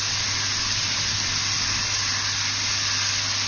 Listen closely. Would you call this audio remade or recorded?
recorded